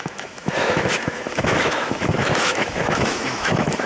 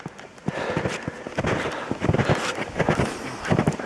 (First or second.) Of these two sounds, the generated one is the first